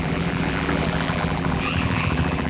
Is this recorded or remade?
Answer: remade